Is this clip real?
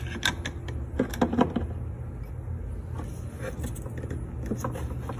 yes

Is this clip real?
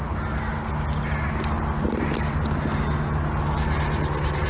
yes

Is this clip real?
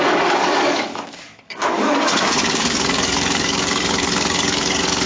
no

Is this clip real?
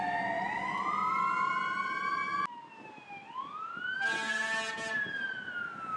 yes